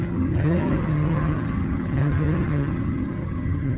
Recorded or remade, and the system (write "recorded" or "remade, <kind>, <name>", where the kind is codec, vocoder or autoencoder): remade, vocoder, HiFi-GAN